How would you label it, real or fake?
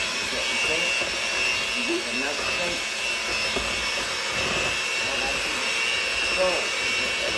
real